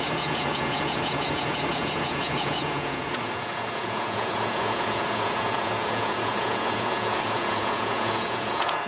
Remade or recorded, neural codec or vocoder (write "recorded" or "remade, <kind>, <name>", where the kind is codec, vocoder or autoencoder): remade, vocoder, Vocos